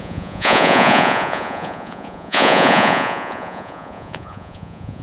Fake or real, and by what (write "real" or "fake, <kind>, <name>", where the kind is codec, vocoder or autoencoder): fake, vocoder, Vocos